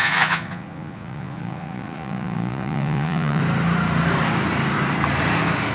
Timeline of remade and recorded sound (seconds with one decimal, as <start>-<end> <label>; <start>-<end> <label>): 0.0-3.4 remade; 3.4-5.7 recorded